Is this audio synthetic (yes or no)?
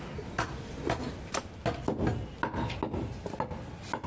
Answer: no